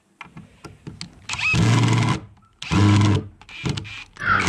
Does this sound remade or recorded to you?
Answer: recorded